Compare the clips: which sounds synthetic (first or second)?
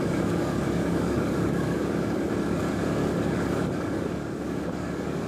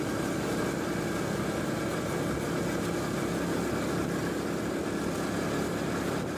first